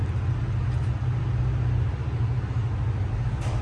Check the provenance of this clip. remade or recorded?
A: recorded